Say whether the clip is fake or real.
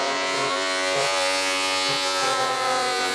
fake